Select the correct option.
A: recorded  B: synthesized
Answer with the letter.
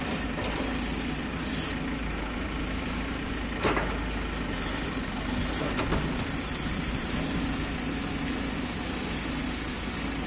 A